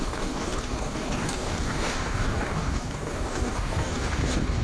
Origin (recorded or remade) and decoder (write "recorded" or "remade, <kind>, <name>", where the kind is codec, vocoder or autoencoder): remade, codec, DAC